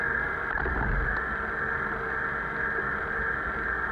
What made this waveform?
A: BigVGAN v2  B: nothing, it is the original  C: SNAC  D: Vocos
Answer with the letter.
B